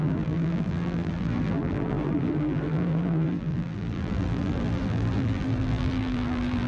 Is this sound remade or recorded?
remade